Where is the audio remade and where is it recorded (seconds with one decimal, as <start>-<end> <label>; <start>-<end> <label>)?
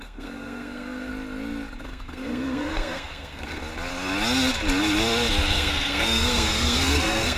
0.0-1.1 remade; 1.1-1.8 recorded; 1.8-3.6 remade; 3.6-5.5 recorded; 5.5-7.4 remade